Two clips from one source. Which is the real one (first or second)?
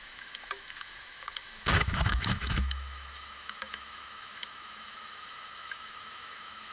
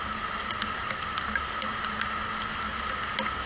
second